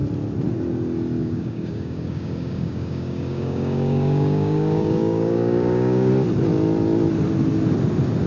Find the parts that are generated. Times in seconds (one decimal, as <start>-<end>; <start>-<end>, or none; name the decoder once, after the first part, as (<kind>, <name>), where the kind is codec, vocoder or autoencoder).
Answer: 1.2-6.1 (codec, DAC)